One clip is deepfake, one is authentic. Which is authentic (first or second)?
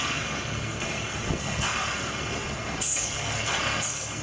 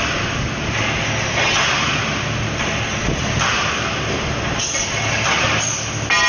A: second